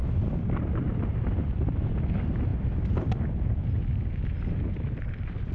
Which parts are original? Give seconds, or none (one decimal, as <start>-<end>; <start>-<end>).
0.0-5.5